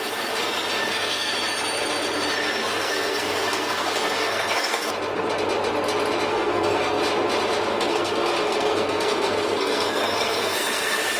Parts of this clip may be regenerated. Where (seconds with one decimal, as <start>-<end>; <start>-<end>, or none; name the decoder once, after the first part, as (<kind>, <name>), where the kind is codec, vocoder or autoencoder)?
0.8-1.3 (codec, SNAC); 2.6-4.9; 6.3-7.0; 7.7-11.2